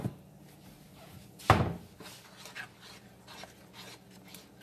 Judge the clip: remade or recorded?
recorded